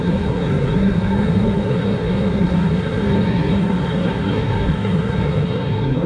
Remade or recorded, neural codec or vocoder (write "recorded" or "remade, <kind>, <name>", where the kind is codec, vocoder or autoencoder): remade, codec, SNAC